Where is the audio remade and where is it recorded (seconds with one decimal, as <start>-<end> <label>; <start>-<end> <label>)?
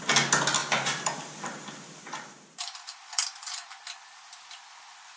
0.0-0.6 recorded; 0.6-3.7 remade; 3.7-5.2 recorded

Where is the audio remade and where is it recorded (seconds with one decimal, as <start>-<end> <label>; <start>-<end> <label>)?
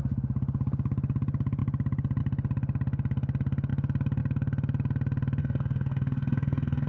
0.0-5.4 recorded; 5.4-6.9 remade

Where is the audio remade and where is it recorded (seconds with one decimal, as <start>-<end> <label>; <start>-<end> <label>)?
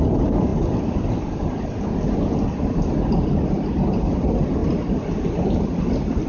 0.0-6.3 recorded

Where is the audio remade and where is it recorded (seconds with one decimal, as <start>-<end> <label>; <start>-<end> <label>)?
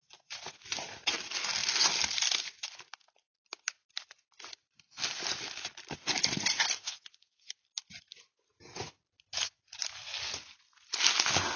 0.0-6.8 recorded; 6.8-7.5 remade; 7.5-11.6 recorded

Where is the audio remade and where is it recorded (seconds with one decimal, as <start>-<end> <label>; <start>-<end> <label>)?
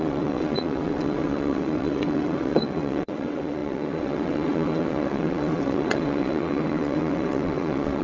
0.0-8.0 remade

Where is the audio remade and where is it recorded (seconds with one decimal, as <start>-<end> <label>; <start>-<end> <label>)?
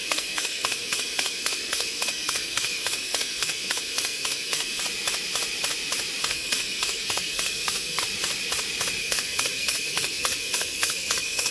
0.0-4.8 remade; 4.8-6.2 recorded; 6.2-8.0 remade; 8.0-9.0 recorded; 9.0-11.5 remade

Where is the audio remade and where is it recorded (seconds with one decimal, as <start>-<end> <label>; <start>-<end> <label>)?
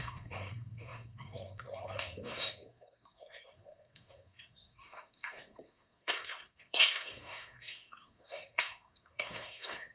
0.0-9.9 remade